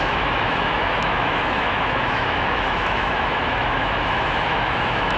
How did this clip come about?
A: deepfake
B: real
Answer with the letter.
A